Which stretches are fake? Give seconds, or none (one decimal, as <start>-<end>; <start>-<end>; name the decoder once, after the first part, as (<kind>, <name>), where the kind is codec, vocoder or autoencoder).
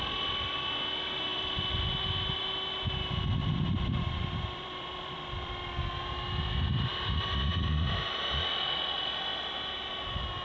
1.3-2.4 (vocoder, BigVGAN v2); 3.4-5.5; 6.9-8.1; 9.3-9.9